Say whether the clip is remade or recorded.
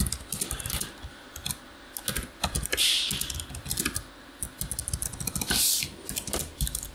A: recorded